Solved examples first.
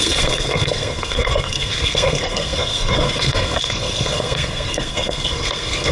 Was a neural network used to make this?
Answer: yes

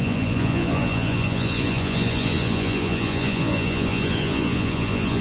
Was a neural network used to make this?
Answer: yes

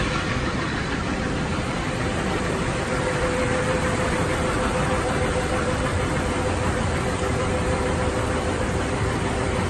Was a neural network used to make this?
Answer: yes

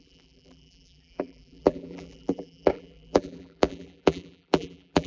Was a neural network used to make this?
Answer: yes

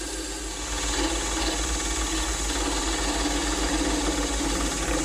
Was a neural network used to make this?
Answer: no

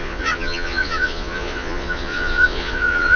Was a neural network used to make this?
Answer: yes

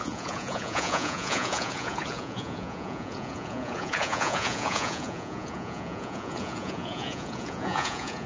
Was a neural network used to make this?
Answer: yes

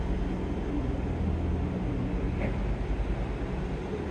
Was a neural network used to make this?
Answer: no